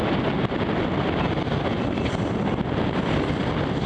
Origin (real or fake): real